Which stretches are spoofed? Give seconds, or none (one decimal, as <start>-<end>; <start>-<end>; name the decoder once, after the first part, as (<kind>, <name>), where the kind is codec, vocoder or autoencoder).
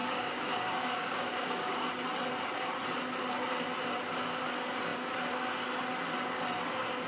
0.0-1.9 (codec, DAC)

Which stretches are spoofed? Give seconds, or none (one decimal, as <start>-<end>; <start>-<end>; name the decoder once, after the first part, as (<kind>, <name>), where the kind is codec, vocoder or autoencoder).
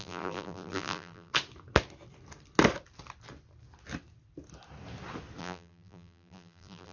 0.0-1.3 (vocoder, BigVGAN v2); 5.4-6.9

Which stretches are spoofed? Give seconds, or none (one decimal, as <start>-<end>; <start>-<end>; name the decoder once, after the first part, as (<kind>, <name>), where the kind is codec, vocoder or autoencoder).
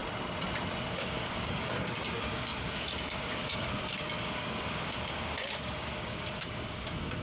0.9-7.2 (codec, DAC)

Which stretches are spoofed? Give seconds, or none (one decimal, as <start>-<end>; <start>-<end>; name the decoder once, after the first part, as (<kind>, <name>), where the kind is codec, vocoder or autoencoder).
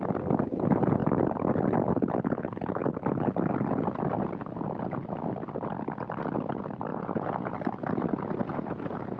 6.9-7.5 (vocoder, Vocos); 8.5-9.2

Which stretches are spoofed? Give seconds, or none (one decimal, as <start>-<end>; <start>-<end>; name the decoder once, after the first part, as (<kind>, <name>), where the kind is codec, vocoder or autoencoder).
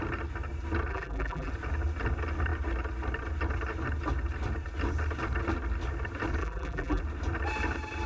0.9-1.5 (vocoder, BigVGAN v2); 6.4-7.0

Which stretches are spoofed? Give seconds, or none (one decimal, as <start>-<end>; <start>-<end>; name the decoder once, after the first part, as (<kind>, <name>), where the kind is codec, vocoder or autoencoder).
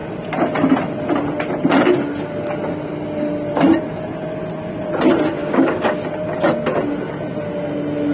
5.4-6.0 (codec, DAC)